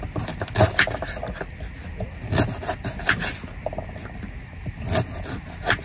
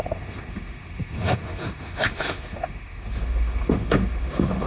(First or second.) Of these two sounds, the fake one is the second